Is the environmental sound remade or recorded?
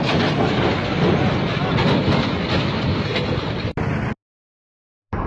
recorded